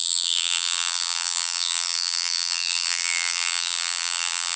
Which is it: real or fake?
fake